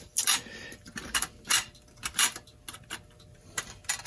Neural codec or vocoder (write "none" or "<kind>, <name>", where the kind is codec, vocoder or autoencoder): vocoder, BigVGAN v2